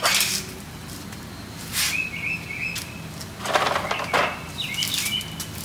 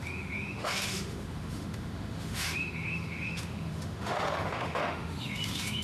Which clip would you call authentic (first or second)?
first